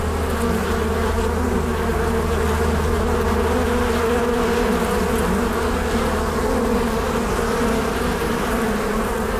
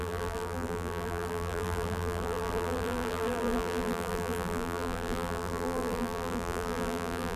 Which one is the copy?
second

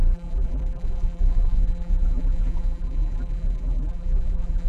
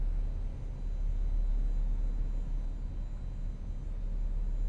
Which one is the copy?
first